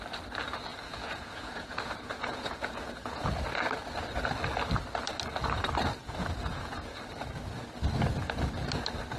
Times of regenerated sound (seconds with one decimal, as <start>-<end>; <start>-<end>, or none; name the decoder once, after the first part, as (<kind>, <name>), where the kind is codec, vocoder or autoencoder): 0.7-3.3 (vocoder, Vocos); 6.0-7.0